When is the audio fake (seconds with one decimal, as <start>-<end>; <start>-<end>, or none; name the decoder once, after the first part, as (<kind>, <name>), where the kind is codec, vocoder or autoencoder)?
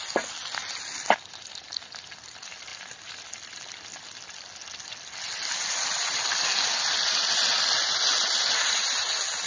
none